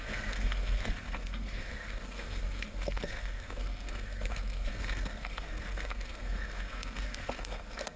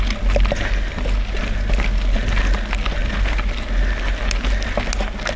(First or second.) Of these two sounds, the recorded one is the second